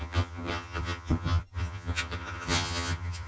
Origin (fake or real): fake